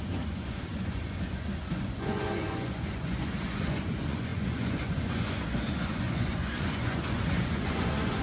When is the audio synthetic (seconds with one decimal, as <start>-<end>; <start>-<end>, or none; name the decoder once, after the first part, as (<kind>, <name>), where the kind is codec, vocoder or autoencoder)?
0.0-8.2 (vocoder, Vocos)